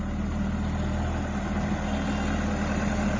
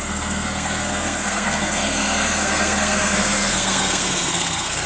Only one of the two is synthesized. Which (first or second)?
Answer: second